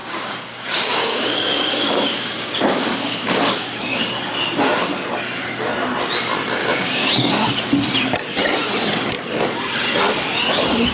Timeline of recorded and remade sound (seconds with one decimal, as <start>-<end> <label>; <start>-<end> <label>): 0.0-4.2 remade; 4.2-6.6 recorded; 6.6-7.1 remade; 7.1-10.9 recorded

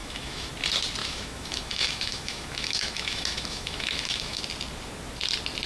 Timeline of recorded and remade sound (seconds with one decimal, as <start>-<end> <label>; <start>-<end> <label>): 0.0-0.5 remade; 0.5-1.0 recorded; 1.0-4.4 remade; 4.4-5.7 recorded